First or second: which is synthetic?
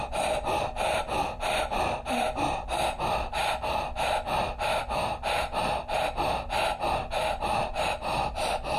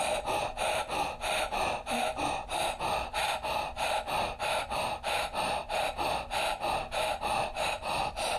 second